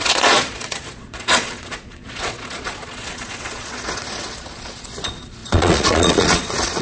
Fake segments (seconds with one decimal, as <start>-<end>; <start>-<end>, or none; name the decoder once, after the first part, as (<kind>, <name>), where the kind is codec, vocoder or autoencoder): 0.0-6.8 (vocoder, Vocos)